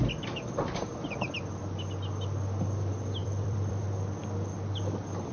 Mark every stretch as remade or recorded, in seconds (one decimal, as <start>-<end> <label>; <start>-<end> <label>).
0.0-3.2 recorded; 3.2-3.8 remade; 3.8-5.3 recorded